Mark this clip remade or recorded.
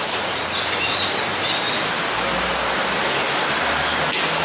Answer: recorded